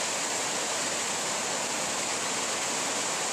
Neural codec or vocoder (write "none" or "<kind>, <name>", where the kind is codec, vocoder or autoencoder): none